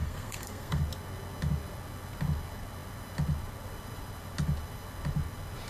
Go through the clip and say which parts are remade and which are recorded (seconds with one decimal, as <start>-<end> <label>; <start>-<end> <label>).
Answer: 0.0-0.8 remade; 0.8-5.7 recorded